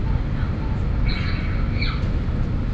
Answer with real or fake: real